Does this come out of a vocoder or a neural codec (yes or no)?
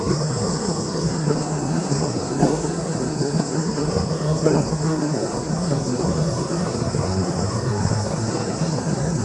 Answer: yes